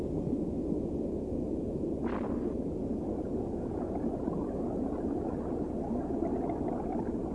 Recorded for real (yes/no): yes